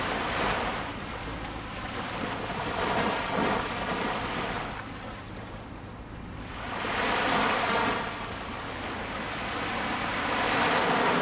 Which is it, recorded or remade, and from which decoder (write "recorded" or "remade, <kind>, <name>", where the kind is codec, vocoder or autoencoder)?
recorded